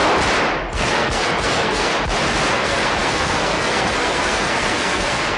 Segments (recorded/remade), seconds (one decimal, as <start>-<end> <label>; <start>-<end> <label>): 0.0-0.7 recorded; 0.7-1.9 remade; 1.9-2.5 recorded; 2.5-5.4 remade